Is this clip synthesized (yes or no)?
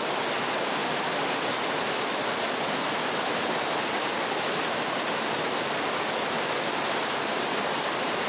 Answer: no